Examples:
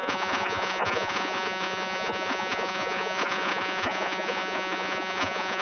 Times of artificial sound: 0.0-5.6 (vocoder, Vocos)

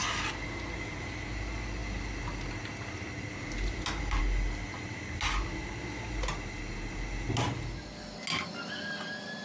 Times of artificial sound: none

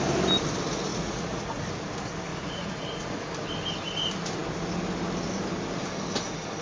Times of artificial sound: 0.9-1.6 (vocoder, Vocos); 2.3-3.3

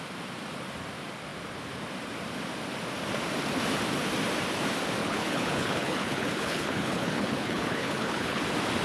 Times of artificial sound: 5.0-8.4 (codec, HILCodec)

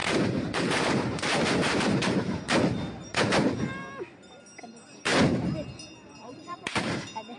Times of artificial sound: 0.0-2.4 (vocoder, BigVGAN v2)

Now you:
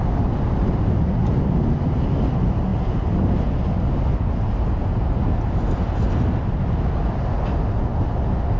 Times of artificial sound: none